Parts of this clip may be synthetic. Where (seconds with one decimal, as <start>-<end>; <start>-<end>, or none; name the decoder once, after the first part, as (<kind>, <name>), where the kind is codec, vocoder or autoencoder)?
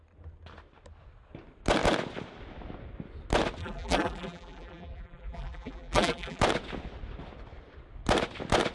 3.6-6.4 (vocoder, BigVGAN v2)